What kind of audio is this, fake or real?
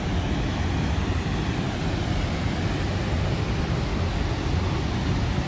real